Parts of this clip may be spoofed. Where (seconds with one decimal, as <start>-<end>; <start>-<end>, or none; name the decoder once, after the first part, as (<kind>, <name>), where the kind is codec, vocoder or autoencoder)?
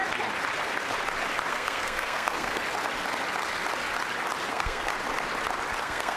1.5-2.6 (codec, SNAC); 4.5-4.9; 5.8-6.2